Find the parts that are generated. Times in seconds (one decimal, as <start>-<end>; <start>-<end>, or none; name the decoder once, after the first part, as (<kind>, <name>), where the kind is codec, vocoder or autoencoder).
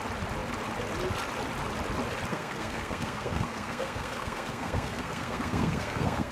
2.3-6.3 (codec, SNAC)